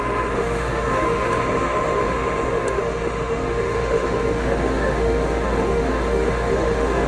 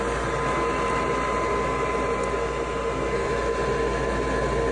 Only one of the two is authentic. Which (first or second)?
second